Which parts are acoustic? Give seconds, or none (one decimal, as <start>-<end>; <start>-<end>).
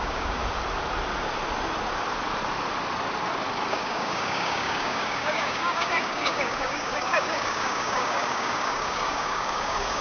0.4-3.7